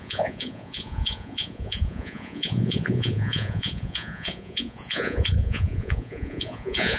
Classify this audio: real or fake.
fake